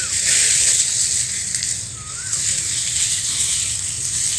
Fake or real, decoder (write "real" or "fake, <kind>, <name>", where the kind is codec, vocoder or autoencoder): real